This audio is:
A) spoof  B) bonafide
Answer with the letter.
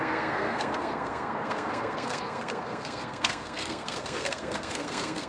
A